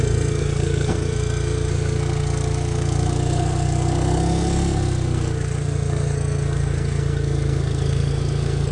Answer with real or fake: fake